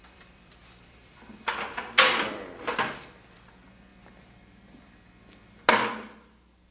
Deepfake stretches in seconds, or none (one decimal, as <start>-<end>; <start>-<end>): 0.0-3.5

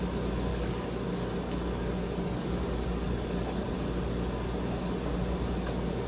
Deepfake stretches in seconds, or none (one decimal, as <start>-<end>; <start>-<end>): 0.5-3.7

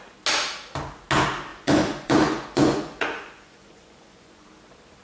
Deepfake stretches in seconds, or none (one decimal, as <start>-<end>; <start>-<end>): 1.5-4.5

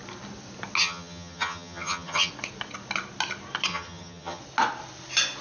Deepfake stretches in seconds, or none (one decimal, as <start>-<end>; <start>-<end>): 0.8-2.3; 3.7-4.4

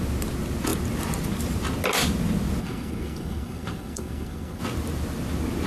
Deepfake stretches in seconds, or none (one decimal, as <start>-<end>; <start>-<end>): 2.6-4.6

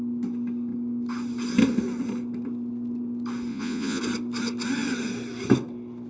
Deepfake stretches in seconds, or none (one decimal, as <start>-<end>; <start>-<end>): 3.5-4.0

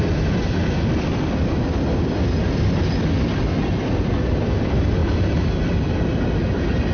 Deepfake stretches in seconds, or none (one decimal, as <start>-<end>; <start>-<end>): none

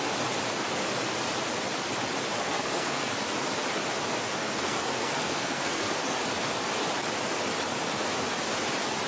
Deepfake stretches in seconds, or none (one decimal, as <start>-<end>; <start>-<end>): 2.4-3.1; 4.4-6.0